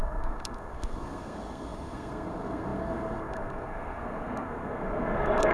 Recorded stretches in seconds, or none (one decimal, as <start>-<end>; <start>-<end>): none

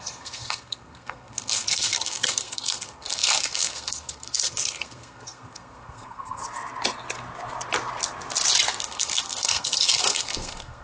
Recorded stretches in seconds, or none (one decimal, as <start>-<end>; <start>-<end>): 6.4-8.8